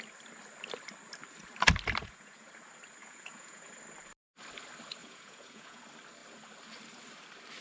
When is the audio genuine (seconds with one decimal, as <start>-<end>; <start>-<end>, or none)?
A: 0.0-2.0; 2.5-3.0; 3.7-5.0; 5.8-7.6